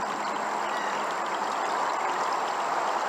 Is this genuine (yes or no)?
yes